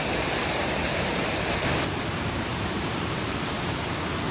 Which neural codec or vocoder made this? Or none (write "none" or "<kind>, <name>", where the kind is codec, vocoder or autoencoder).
vocoder, BigVGAN v2